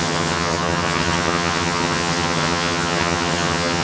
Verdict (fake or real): fake